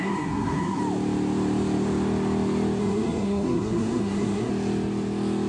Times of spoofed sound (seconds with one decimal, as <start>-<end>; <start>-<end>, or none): 0.0-0.8; 2.8-4.5